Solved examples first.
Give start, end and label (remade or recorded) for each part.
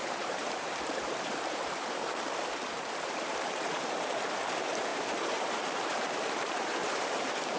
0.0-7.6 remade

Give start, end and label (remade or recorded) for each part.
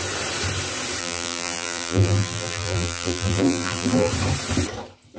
0.0-1.0 recorded; 1.0-4.1 remade; 4.1-5.2 recorded